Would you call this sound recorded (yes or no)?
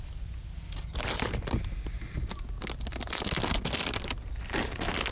yes